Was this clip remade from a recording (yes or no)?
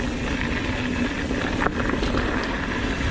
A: no